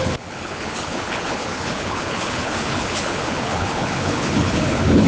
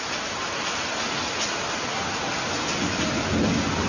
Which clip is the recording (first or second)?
second